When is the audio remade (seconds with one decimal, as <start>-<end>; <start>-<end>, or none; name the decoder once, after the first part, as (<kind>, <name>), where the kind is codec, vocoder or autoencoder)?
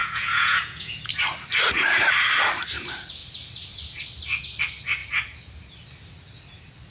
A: 0.0-1.1 (vocoder, Vocos)